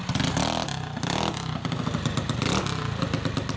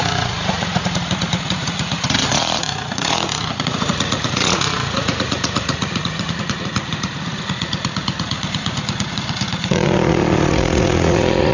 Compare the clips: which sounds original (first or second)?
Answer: first